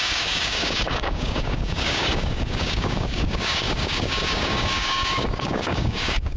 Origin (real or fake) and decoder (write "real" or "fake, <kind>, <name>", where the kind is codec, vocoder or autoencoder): fake, codec, DAC